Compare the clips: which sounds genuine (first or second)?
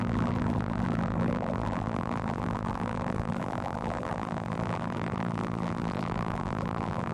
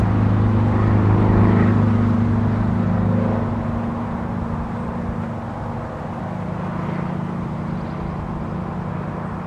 second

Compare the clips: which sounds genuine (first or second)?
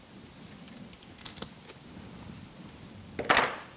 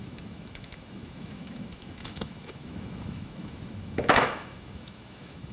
first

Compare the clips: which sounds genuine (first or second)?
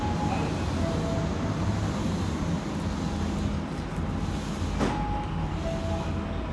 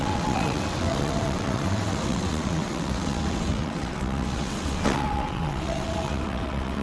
first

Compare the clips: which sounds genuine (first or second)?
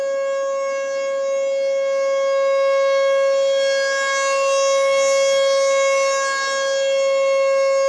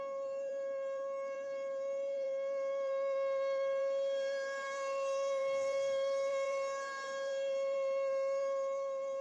first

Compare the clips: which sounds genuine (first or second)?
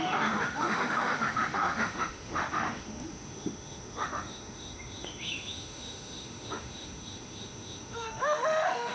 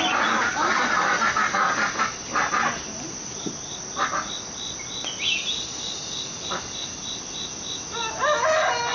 second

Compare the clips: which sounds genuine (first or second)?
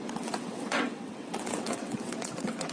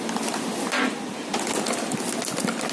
second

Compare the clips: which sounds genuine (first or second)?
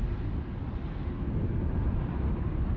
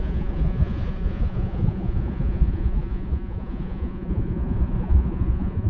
first